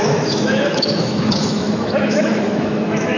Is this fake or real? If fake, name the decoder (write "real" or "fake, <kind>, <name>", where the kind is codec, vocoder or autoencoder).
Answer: fake, autoencoder, DAC-VAE